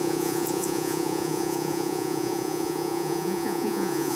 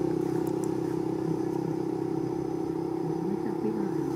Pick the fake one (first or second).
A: first